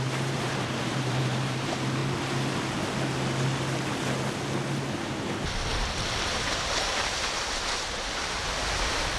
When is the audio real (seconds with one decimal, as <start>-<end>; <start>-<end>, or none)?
2.0-5.9